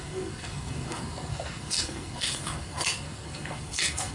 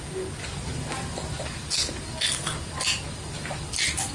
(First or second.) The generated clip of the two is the first